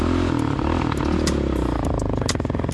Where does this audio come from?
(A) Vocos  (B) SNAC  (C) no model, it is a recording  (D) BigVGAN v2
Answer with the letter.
C